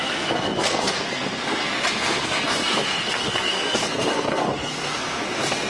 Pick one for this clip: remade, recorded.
remade